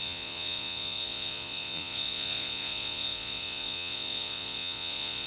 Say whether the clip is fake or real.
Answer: fake